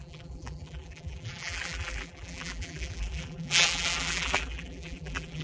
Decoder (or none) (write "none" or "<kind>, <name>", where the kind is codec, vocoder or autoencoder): vocoder, BigVGAN v2